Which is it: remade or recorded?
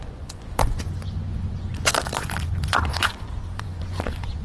remade